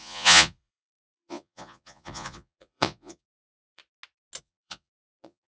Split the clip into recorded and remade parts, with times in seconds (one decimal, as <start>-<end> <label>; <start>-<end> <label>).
0.0-3.8 remade; 3.8-4.4 recorded; 4.4-5.5 remade